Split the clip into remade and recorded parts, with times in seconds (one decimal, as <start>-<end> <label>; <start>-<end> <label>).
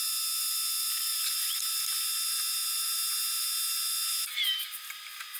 0.0-5.4 recorded